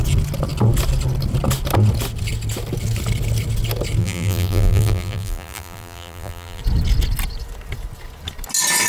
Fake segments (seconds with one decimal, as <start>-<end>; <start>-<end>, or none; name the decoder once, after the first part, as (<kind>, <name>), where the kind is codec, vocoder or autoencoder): 4.0-6.6 (vocoder, BigVGAN v2)